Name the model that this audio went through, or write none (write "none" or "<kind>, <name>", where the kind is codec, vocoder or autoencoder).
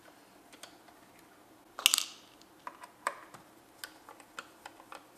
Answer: none